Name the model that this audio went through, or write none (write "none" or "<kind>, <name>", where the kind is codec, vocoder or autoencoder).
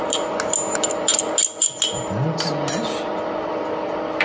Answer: none